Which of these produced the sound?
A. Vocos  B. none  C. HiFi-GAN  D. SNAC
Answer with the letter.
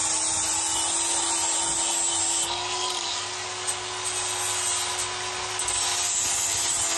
B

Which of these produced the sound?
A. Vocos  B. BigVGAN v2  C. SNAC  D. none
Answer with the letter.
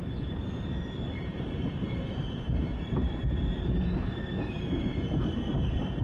B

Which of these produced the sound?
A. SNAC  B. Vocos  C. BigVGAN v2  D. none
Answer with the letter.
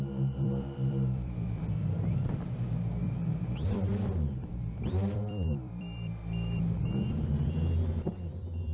C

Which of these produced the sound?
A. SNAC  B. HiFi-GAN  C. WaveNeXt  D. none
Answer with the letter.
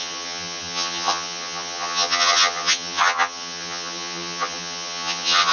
B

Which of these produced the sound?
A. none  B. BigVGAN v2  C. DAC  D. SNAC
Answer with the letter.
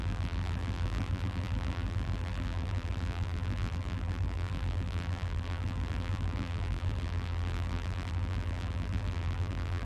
B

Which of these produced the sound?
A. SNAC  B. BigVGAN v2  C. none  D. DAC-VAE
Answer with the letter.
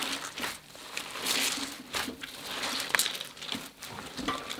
B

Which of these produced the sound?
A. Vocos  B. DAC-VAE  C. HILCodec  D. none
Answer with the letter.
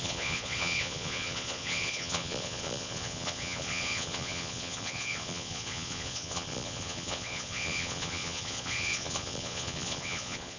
A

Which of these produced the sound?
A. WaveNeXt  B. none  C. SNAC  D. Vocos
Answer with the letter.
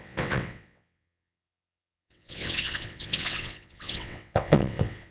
A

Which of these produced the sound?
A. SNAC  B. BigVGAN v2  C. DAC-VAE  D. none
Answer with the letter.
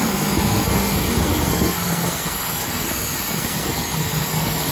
A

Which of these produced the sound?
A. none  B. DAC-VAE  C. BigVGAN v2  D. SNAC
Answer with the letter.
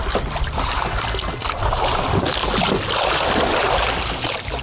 A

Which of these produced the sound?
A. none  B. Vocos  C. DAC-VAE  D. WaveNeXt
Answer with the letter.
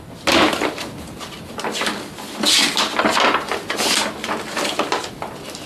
A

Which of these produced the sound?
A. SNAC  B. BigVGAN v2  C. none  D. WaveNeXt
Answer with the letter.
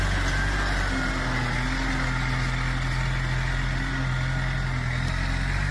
C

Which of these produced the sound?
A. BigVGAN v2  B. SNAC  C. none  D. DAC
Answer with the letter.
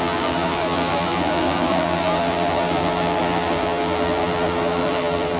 A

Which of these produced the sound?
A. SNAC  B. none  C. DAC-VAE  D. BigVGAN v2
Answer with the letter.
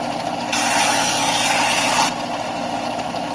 B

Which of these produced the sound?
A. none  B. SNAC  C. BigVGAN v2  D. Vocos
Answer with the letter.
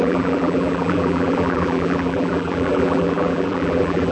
C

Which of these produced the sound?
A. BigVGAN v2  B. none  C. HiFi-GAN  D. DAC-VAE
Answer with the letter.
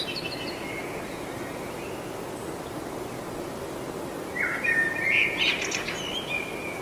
B